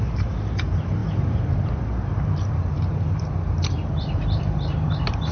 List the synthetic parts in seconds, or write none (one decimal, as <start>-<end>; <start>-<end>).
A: 0.0-5.3

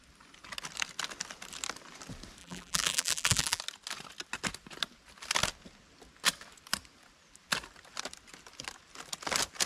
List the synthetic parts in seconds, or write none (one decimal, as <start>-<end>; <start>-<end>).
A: 2.4-3.6

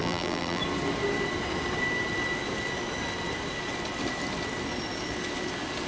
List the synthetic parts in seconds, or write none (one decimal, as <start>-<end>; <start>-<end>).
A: 0.0-0.6

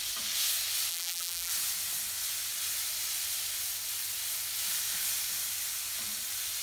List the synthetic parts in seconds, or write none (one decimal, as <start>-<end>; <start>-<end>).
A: 0.9-1.5

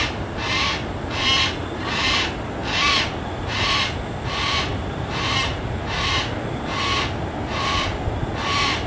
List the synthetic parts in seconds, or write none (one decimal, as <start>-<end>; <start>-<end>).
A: 4.7-6.2